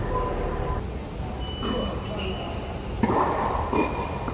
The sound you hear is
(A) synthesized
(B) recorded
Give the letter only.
B